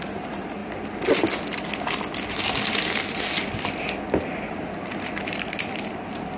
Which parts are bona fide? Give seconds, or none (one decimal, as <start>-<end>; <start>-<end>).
0.0-6.4